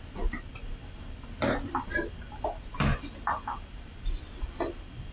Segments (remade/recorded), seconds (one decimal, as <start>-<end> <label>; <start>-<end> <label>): 0.0-5.1 recorded